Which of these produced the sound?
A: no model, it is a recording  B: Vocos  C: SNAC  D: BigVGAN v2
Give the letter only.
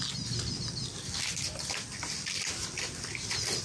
A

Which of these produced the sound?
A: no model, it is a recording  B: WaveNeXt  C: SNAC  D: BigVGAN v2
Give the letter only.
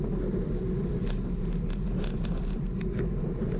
A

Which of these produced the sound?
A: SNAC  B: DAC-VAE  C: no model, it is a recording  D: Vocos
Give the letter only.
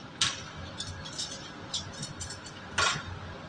C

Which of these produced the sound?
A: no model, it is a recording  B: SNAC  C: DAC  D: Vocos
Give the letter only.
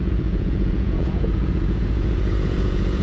D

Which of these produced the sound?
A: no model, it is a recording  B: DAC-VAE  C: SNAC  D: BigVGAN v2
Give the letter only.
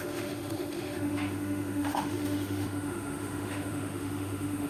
B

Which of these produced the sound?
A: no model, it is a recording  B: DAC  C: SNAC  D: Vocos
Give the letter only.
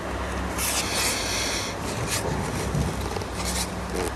A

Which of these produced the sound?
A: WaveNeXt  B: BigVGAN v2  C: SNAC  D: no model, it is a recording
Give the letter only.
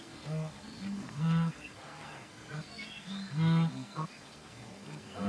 C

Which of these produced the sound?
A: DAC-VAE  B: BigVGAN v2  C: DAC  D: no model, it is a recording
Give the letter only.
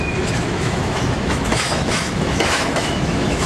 A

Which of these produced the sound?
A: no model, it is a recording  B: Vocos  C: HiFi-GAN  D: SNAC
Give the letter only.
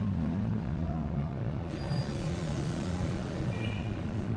B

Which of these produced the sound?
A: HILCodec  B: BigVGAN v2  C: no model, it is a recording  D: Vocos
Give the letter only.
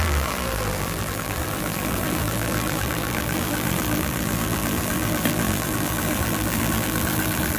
B